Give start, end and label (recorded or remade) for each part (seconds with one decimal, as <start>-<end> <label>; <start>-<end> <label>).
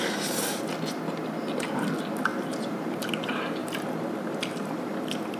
0.0-2.3 recorded; 2.3-3.1 remade; 3.1-3.6 recorded; 3.6-4.9 remade; 4.9-5.4 recorded